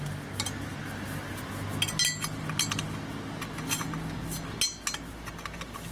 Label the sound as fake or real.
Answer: real